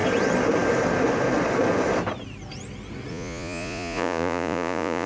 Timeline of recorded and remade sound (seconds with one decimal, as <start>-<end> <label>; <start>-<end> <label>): 0.0-3.1 recorded; 3.1-5.1 remade